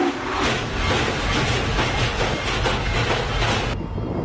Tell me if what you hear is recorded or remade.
recorded